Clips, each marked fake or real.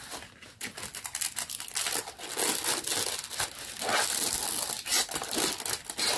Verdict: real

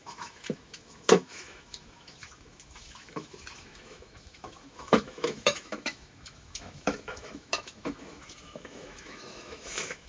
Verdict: fake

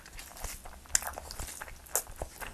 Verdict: real